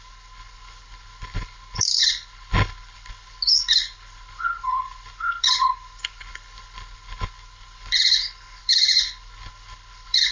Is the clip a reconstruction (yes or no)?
yes